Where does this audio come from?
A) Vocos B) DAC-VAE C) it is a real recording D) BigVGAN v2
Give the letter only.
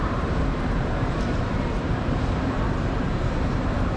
D